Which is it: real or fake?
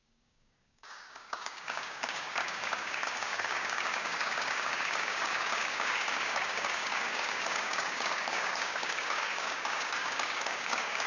fake